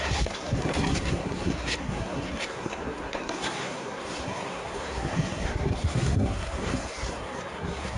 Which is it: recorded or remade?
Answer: remade